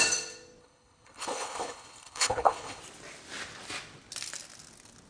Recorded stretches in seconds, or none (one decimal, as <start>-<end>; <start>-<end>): 0.0-0.6; 2.8-5.1